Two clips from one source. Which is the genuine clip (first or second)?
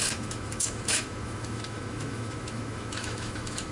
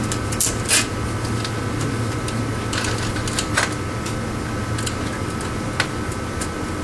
second